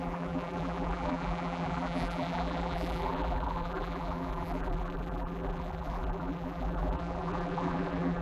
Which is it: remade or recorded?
remade